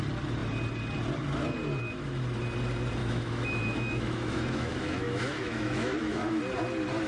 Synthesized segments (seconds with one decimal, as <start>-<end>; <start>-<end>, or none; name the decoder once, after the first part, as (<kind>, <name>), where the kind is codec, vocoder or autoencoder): 3.0-6.4 (autoencoder, DAC-VAE)